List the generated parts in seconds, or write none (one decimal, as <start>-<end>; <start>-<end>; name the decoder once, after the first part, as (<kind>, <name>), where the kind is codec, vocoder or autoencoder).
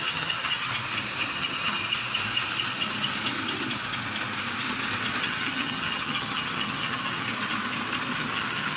0.0-0.7 (vocoder, HiFi-GAN); 1.3-1.8; 5.2-7.3; 8.2-8.8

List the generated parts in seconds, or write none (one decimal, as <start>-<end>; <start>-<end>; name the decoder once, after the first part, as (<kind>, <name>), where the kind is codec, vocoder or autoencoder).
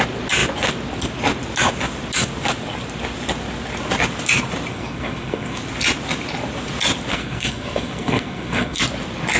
4.7-5.6 (codec, SNAC); 7.1-8.8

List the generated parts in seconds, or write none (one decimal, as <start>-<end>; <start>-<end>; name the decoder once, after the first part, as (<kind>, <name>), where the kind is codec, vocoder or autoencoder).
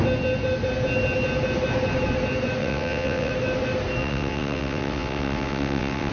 2.6-3.3 (vocoder, WaveNeXt); 4.0-6.1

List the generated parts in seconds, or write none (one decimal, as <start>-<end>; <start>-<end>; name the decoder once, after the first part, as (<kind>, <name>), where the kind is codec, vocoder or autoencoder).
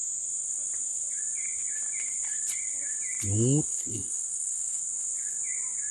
3.7-4.8 (codec, SNAC)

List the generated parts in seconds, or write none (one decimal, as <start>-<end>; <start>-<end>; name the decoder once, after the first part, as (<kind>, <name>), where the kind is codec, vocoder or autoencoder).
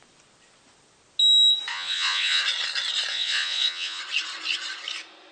1.7-2.4 (vocoder, Vocos); 3.1-4.0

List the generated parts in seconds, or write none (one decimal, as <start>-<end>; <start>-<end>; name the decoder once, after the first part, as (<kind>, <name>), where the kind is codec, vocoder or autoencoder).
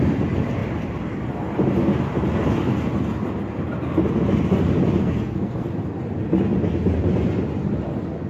5.0-5.7 (codec, SNAC)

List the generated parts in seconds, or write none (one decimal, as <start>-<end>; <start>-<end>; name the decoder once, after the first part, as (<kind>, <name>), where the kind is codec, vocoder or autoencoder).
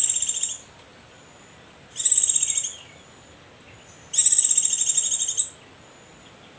none